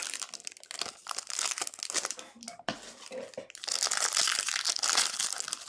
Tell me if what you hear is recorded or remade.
recorded